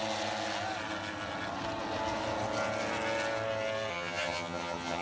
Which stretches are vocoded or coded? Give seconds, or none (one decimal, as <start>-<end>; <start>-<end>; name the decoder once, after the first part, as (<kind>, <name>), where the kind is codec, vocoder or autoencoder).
3.9-5.0 (vocoder, HiFi-GAN)